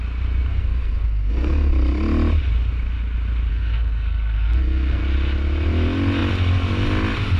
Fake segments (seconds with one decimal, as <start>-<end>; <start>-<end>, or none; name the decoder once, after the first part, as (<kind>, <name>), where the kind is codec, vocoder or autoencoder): 0.5-1.7 (codec, SNAC); 3.5-5.0